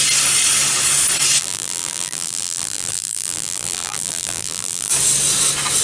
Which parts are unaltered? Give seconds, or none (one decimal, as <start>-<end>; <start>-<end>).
0.0-1.4; 4.9-5.8